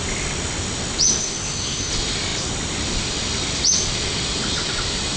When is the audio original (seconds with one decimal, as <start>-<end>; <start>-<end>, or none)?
0.0-1.2; 1.9-5.2